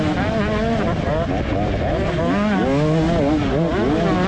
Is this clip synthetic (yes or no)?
no